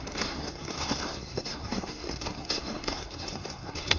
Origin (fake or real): fake